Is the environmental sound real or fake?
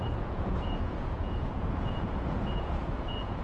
fake